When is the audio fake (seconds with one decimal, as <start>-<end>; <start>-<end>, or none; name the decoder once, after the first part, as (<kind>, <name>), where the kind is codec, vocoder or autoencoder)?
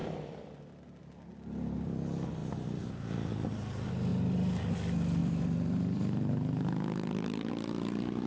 0.0-0.6 (vocoder, BigVGAN v2); 2.4-2.9; 4.1-4.7; 5.2-7.5